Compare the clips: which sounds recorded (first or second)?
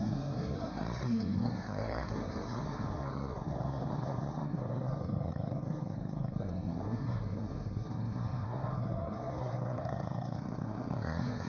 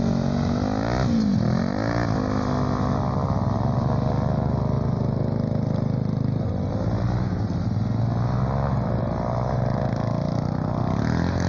second